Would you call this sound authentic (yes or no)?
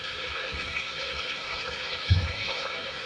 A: no